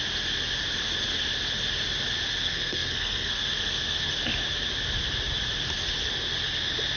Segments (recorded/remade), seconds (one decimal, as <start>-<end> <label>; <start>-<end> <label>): 0.0-2.4 recorded; 2.4-4.1 remade; 4.1-7.0 recorded